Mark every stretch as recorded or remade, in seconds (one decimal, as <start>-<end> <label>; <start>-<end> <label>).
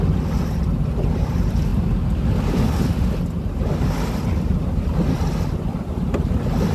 0.0-6.7 recorded